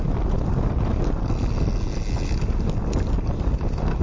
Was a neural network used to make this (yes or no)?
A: no